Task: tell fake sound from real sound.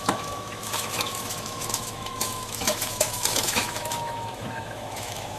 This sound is fake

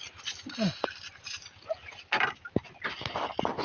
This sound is real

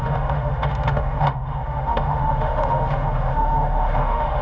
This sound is fake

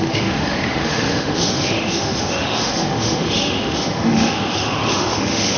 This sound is fake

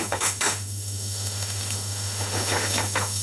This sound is fake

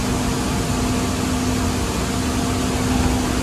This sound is real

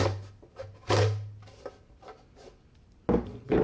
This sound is real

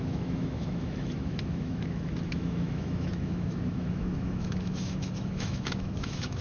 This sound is fake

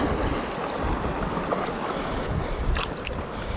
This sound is real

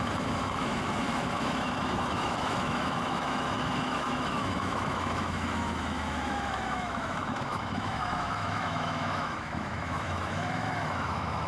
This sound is fake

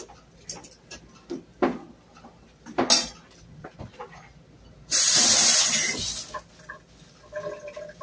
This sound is real